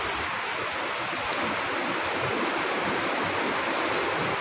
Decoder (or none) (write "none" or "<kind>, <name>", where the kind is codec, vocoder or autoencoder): none